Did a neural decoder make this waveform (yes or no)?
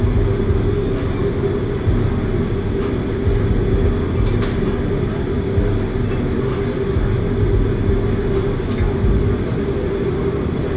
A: no